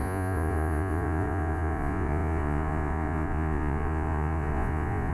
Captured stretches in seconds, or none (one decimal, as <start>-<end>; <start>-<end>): none